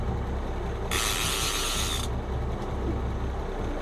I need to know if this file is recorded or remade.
recorded